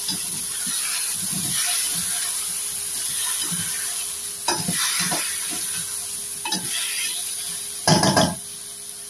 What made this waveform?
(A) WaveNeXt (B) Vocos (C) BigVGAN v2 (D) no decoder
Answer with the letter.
C